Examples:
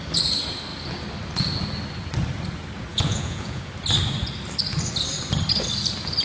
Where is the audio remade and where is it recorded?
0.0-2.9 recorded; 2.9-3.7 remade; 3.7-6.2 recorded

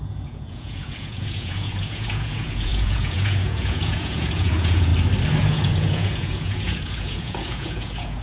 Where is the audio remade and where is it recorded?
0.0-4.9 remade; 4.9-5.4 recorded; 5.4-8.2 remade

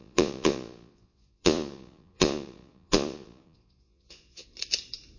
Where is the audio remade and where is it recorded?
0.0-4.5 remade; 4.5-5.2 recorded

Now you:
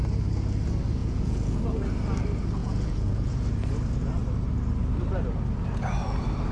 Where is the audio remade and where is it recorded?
0.0-1.0 recorded; 1.0-1.6 remade; 1.6-2.6 recorded; 2.6-3.3 remade; 3.3-6.5 recorded